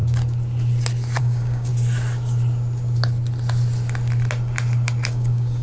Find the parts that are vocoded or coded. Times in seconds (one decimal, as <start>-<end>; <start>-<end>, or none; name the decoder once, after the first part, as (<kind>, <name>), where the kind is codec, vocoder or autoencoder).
1.2-1.7 (codec, DAC); 5.1-5.6